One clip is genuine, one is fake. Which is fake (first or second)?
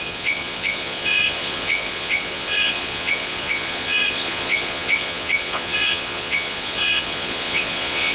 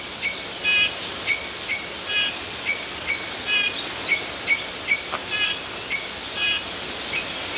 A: first